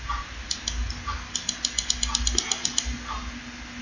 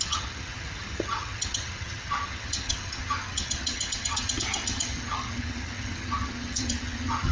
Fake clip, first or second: second